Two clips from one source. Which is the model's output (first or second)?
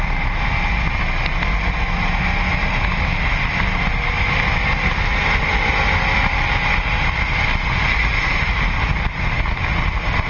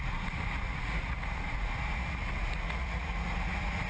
second